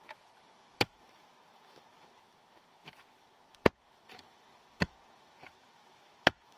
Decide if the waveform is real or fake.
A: fake